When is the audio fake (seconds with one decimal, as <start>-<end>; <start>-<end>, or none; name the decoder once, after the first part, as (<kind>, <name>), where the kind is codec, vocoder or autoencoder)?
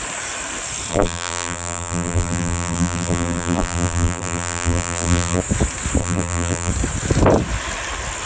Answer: 0.9-5.4 (vocoder, BigVGAN v2); 6.0-6.7